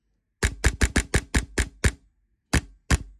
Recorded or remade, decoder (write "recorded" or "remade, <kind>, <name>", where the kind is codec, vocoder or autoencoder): recorded